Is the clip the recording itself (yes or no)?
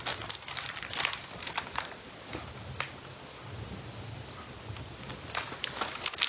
yes